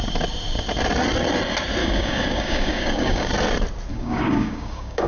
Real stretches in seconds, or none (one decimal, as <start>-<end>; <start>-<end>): 0.0-1.8; 3.3-3.9